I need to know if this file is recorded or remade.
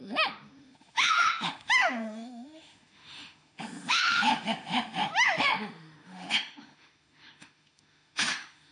remade